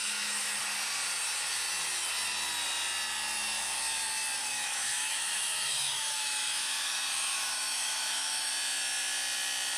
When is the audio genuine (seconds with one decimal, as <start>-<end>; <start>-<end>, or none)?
0.6-4.4; 8.5-9.8